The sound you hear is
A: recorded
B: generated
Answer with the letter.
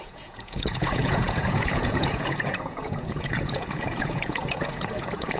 B